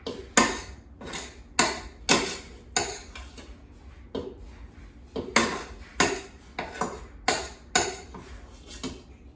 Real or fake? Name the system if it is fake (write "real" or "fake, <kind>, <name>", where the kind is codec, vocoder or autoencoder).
real